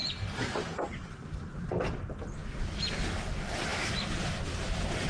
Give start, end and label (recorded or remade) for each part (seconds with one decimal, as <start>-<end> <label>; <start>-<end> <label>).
0.0-5.1 recorded

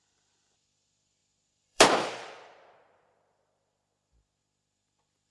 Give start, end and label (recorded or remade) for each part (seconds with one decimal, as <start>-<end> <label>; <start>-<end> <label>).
0.0-5.3 remade